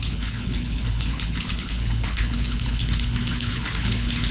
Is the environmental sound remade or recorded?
remade